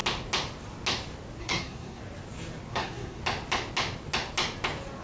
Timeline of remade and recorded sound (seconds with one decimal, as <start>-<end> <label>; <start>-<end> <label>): 0.0-1.4 recorded; 1.4-2.0 remade; 2.0-2.7 recorded; 2.7-3.2 remade; 3.2-5.0 recorded